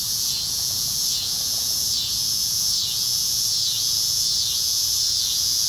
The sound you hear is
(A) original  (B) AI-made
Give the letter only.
B